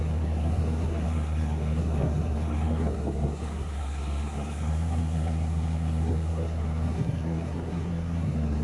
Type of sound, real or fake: fake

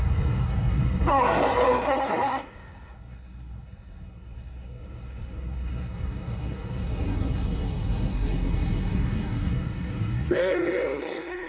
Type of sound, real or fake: fake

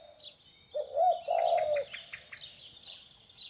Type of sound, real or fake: real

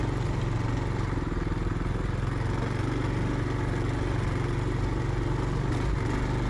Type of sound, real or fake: real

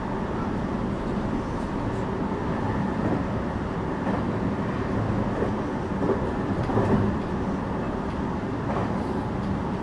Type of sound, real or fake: real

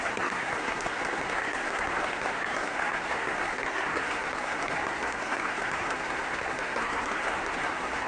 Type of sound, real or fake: fake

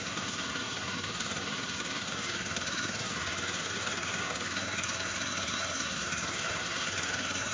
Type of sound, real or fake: fake